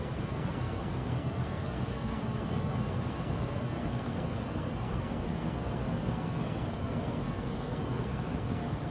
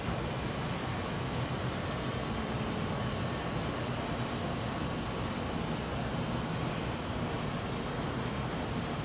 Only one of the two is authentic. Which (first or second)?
second